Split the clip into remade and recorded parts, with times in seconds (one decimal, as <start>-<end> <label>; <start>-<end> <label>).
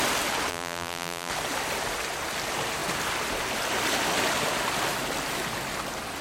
0.0-0.5 recorded; 0.5-1.3 remade; 1.3-6.2 recorded